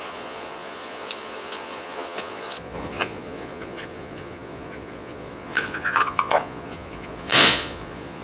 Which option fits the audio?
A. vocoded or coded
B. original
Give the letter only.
A